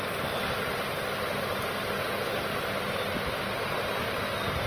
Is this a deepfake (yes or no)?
no